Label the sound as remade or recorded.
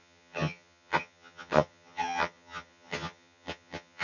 remade